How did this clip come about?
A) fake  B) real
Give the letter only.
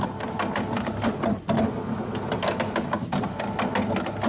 B